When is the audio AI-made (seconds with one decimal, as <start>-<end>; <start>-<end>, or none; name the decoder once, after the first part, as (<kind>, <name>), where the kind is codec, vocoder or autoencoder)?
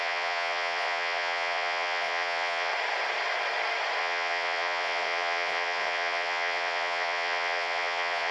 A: 0.0-2.7 (vocoder, Vocos); 4.0-8.3